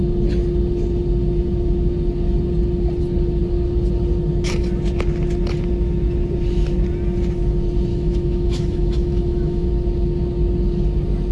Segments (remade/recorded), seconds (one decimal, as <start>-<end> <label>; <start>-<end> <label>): 0.0-7.9 recorded; 7.9-9.7 remade; 9.7-11.3 recorded